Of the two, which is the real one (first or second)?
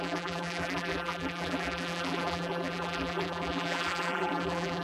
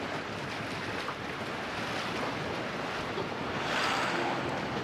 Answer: second